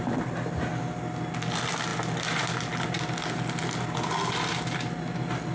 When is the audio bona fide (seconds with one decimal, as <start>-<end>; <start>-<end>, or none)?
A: 0.0-5.5